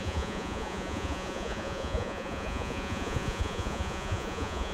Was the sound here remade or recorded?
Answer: remade